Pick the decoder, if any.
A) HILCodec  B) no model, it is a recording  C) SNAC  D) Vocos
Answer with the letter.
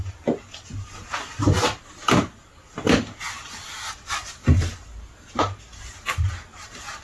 B